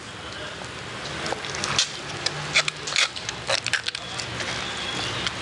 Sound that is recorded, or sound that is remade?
recorded